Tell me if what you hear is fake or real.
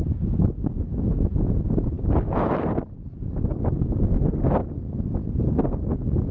real